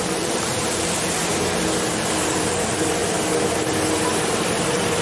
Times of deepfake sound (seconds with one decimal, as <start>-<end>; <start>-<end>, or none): 0.0-1.2; 1.9-3.0; 4.2-5.0